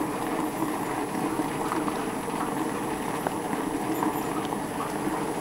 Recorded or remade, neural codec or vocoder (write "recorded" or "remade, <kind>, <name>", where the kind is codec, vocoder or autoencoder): recorded